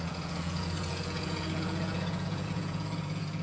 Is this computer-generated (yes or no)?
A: yes